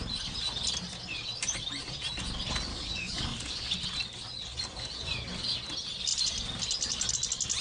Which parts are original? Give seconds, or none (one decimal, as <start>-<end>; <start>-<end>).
0.0-2.7; 3.7-7.6